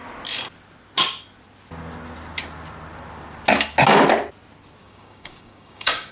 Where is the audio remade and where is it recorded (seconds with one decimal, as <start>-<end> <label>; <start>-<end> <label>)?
0.0-4.8 recorded; 4.8-6.1 remade